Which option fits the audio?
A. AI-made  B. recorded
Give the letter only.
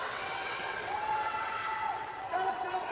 A